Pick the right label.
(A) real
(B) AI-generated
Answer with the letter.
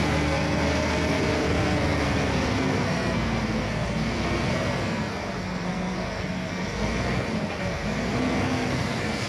B